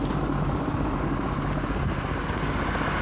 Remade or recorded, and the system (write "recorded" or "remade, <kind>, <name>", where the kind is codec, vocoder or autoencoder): remade, vocoder, BigVGAN v2